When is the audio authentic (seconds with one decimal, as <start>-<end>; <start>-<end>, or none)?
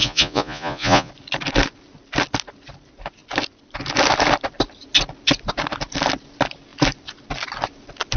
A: 1.1-8.2